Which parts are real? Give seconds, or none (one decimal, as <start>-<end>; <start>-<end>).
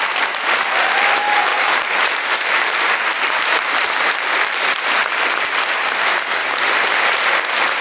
0.0-1.5; 5.7-6.4; 7.1-7.8